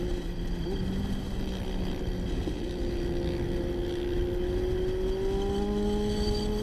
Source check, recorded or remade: recorded